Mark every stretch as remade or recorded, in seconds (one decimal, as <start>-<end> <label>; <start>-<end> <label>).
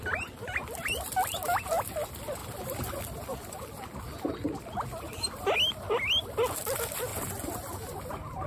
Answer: 0.0-2.4 recorded; 2.4-3.6 remade; 3.6-8.5 recorded